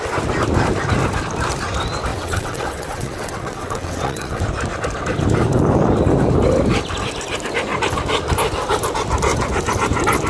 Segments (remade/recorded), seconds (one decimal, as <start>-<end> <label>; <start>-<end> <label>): 0.0-2.1 recorded; 2.1-4.4 remade; 4.4-10.3 recorded